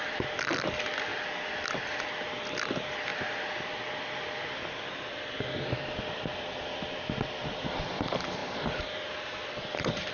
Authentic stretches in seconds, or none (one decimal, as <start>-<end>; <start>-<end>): 1.1-1.8; 3.1-5.1